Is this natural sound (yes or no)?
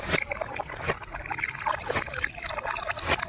yes